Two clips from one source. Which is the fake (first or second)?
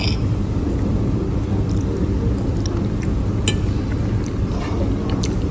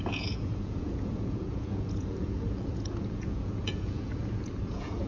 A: second